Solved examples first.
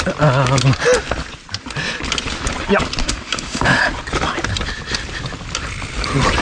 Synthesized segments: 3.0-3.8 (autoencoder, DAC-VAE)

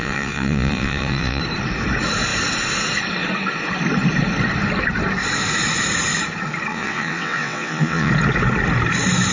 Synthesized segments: 0.0-1.4 (vocoder, WaveNeXt); 6.7-8.1

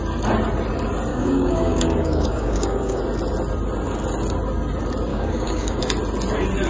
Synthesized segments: 1.1-3.0 (codec, DAC); 5.1-5.8

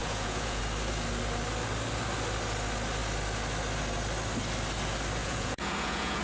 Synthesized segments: 0.0-0.6 (vocoder, Vocos); 5.2-6.2

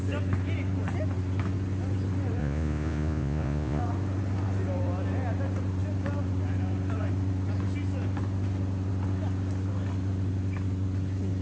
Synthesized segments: 2.4-3.8 (vocoder, Vocos)

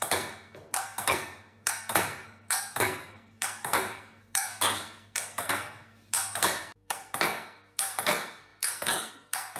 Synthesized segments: 0.0-9.6 (codec, SNAC)

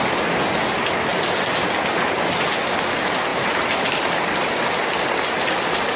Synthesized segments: none

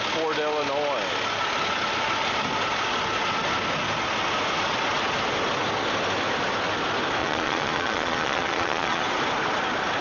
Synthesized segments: 7.2-9.0 (vocoder, Vocos)